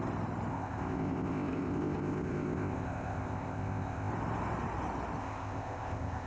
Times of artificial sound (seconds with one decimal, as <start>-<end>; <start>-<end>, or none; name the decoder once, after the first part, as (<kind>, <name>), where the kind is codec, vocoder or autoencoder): 0.5-4.1 (codec, ZipCodec); 5.2-6.3